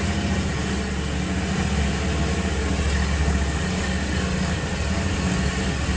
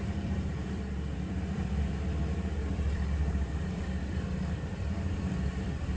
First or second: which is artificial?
second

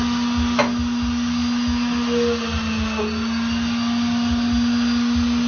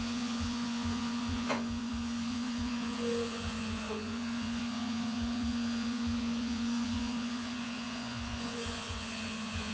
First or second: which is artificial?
second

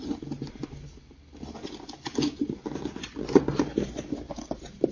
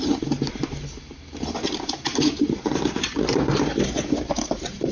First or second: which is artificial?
second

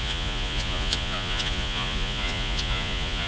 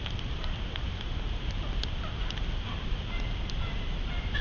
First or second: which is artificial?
first